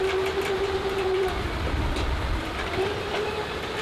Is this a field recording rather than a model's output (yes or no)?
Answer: no